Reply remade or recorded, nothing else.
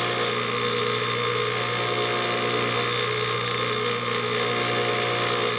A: recorded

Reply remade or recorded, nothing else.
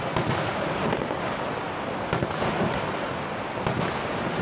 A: recorded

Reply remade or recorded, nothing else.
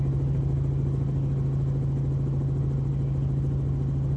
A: recorded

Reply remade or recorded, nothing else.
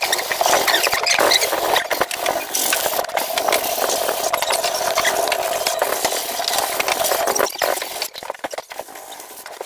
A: recorded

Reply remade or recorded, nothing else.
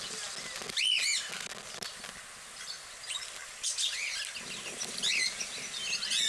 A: recorded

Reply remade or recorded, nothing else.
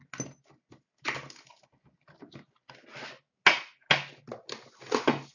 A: recorded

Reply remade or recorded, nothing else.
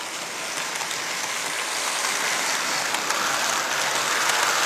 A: recorded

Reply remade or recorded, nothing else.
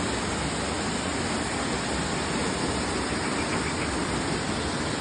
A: recorded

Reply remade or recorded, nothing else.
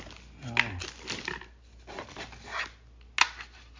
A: recorded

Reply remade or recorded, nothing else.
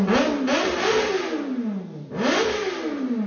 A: recorded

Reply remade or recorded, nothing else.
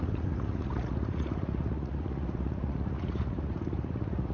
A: remade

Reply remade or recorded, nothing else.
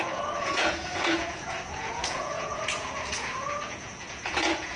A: remade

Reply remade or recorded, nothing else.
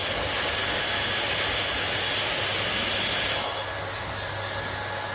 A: recorded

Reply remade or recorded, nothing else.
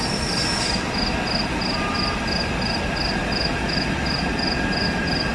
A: recorded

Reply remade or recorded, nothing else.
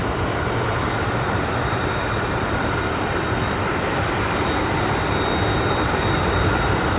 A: recorded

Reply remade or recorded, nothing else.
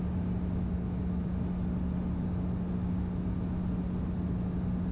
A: recorded